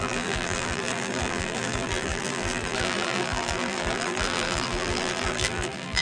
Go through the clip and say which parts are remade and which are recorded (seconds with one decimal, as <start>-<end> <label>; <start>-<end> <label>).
0.0-6.0 remade